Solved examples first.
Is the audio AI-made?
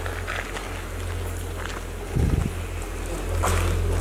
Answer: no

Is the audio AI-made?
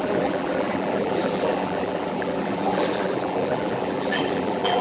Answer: yes